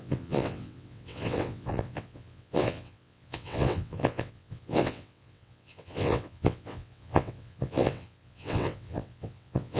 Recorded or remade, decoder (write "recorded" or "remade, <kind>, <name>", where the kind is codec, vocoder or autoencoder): remade, vocoder, WaveNeXt